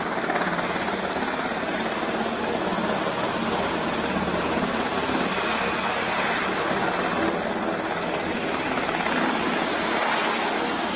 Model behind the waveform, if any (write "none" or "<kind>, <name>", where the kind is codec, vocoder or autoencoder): none